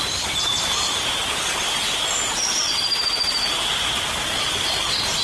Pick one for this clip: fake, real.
real